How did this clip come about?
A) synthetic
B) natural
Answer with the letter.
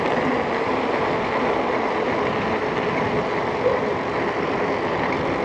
B